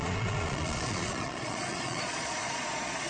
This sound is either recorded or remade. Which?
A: remade